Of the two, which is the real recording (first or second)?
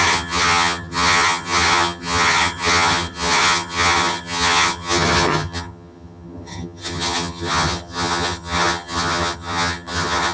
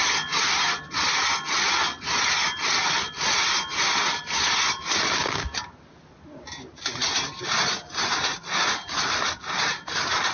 second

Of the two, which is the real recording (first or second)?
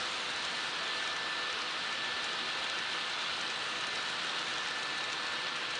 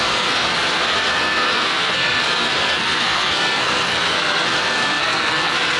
first